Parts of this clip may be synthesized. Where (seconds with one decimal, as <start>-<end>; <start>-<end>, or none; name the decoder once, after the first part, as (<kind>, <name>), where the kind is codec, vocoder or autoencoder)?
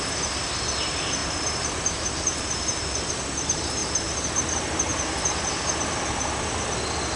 1.2-3.1 (vocoder, BigVGAN v2)